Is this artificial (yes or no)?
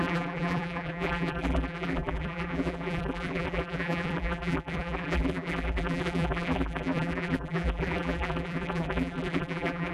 yes